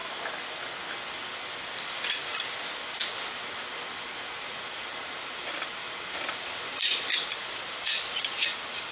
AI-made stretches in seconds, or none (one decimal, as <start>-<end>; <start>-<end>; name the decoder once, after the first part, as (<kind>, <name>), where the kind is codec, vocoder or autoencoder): 5.0-8.9 (vocoder, BigVGAN v2)